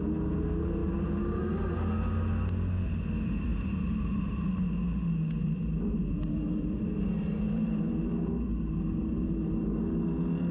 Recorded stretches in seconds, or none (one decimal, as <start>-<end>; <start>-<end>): 0.0-3.5; 4.2-5.4; 9.8-10.5